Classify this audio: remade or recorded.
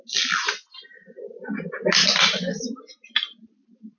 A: recorded